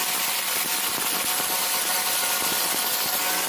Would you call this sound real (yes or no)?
yes